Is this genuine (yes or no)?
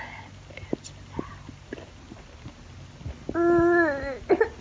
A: yes